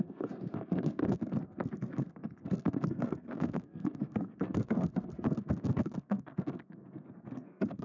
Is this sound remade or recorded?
remade